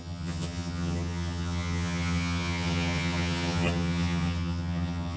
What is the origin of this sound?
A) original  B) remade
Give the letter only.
B